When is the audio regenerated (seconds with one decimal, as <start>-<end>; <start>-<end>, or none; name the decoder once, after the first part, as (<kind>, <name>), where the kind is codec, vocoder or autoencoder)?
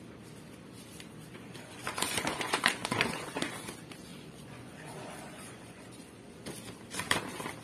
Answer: 1.3-3.5 (vocoder, Vocos); 4.1-6.4